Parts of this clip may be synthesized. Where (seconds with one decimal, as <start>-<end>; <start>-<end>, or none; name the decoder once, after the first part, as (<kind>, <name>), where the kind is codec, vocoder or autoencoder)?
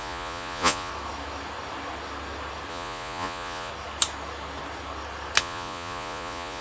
0.0-0.9 (vocoder, Vocos); 2.7-3.7; 5.4-6.6